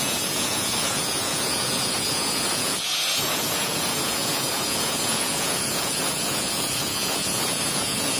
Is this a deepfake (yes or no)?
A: yes